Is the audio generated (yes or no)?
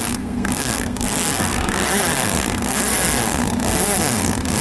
yes